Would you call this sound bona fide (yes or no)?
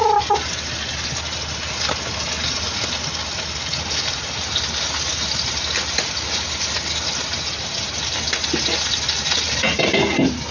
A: yes